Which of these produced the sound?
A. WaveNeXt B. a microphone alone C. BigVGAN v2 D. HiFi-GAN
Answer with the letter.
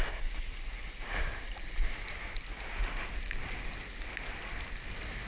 B